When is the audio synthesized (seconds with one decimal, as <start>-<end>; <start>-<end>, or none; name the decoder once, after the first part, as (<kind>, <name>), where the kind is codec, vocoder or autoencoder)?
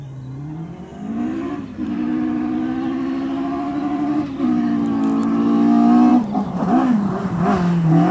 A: 6.1-7.2 (vocoder, BigVGAN v2)